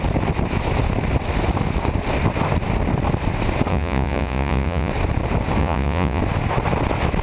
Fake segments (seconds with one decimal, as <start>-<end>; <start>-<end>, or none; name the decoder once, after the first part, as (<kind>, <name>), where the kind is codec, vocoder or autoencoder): 3.7-4.9 (vocoder, Vocos); 5.6-6.2

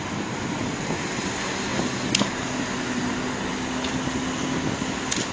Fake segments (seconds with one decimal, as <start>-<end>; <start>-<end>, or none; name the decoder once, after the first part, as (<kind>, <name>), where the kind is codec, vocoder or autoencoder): none

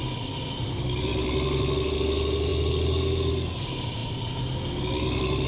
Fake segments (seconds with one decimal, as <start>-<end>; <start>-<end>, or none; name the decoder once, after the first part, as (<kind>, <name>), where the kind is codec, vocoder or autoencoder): none

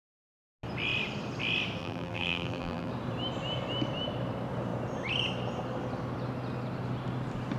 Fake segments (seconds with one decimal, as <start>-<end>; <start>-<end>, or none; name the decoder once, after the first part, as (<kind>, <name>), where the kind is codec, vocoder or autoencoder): 1.8-2.9 (vocoder, BigVGAN v2)

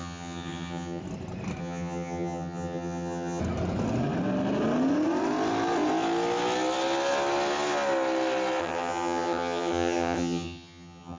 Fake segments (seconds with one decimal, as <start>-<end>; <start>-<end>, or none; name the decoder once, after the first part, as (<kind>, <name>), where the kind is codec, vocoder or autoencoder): 0.0-1.0 (vocoder, HiFi-GAN); 1.6-3.4; 8.6-11.2